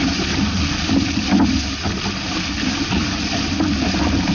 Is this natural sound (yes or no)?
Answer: yes